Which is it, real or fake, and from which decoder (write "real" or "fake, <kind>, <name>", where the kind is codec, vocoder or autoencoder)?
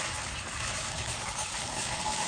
fake, codec, DAC